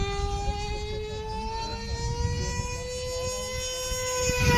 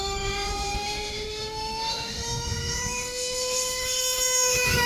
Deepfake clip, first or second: second